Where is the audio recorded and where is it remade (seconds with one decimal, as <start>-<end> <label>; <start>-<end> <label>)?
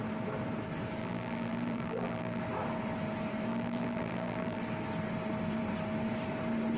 0.0-1.0 recorded; 1.0-2.4 remade; 2.4-3.5 recorded; 3.5-4.6 remade; 4.6-6.8 recorded